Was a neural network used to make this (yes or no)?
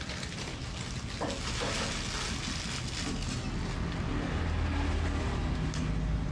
no